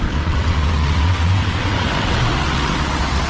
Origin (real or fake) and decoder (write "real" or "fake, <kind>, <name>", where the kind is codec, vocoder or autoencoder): fake, vocoder, WaveNeXt